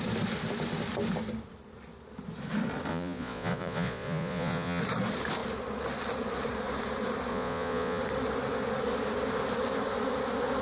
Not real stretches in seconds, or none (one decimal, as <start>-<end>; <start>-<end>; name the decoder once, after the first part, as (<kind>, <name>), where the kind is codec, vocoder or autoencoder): 2.9-4.8 (vocoder, Vocos); 7.3-8.0